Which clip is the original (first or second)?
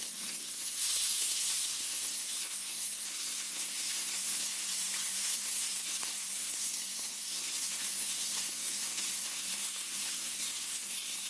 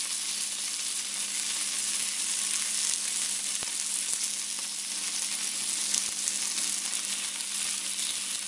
second